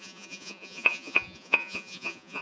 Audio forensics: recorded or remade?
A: remade